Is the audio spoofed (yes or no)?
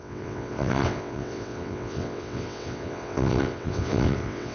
yes